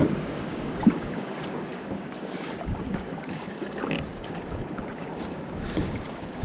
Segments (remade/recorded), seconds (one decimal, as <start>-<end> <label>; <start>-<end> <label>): 0.0-6.4 remade